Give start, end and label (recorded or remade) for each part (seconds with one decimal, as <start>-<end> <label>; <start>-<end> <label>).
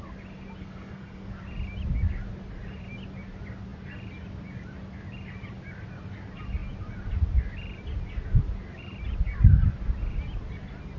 0.0-0.6 recorded; 0.6-1.3 remade; 1.3-11.0 recorded